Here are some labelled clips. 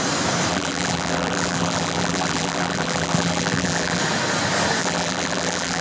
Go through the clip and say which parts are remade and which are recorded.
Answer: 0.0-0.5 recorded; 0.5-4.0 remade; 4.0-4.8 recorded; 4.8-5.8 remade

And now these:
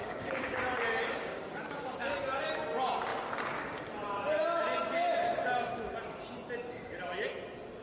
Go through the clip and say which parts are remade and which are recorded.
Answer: 0.0-0.6 remade; 0.6-1.2 recorded; 1.2-2.1 remade; 2.1-7.8 recorded

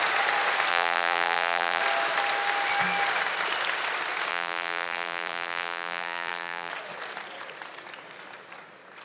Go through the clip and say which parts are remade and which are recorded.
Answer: 0.0-0.7 recorded; 0.7-1.8 remade; 1.8-4.3 recorded; 4.3-6.7 remade; 6.7-9.0 recorded